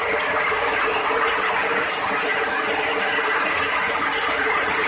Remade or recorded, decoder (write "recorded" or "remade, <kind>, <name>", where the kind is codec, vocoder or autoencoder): recorded